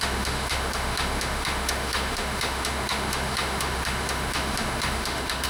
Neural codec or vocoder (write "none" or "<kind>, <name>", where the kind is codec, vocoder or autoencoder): autoencoder, DAC-VAE